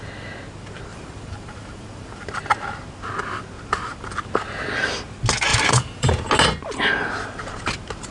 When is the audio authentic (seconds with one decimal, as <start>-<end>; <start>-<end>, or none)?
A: 0.0-0.9; 2.4-5.5; 6.1-8.1